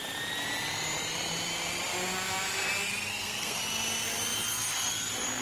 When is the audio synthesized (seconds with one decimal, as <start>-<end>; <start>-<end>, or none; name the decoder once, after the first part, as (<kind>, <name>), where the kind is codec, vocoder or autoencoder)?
3.1-3.6 (codec, SNAC)